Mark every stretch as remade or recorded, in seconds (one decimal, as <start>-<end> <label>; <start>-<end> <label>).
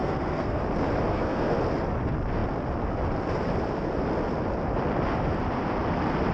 0.0-0.6 remade; 0.6-1.1 recorded; 1.1-1.6 remade; 1.6-6.3 recorded